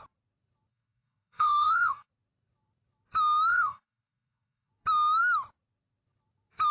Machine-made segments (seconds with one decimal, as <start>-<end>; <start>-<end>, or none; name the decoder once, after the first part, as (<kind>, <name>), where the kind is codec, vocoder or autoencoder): 0.7-2.1 (codec, DAC); 3.5-4.7